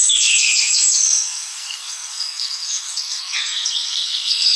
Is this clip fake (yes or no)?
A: yes